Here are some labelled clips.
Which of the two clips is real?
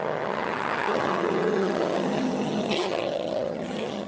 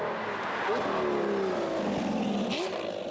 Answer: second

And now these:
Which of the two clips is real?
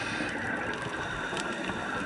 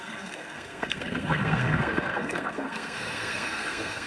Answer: first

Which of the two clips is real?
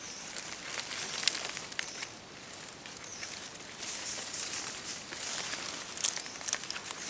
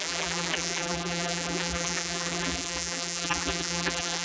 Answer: first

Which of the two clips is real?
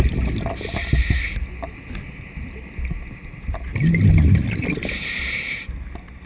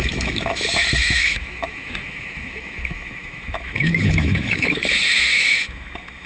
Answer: first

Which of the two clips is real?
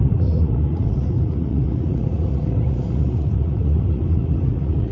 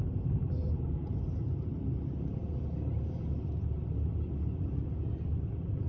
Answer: second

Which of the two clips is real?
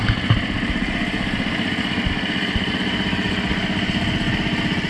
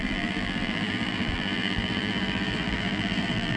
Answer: first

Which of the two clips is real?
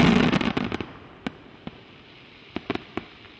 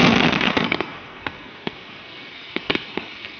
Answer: first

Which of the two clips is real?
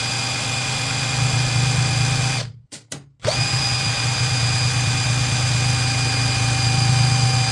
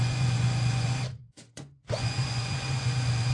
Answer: first